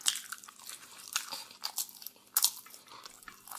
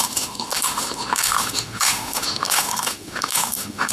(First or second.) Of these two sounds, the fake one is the second